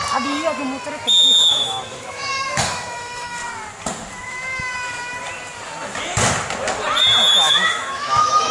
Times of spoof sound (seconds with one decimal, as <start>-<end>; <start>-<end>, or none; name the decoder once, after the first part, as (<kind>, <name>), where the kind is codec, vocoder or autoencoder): 1.5-3.4 (autoencoder, DAC-VAE); 7.3-8.5